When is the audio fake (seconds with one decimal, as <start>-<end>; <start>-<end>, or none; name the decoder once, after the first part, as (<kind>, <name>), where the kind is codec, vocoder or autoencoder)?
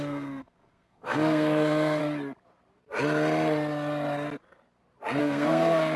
0.0-2.0 (codec, SNAC); 5.2-6.0